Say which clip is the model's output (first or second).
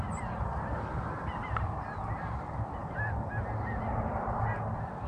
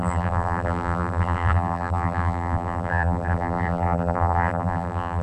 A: second